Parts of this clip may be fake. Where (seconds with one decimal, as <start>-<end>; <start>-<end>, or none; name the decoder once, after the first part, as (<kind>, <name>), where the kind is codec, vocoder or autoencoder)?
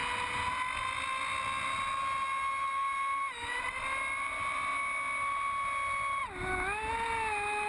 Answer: none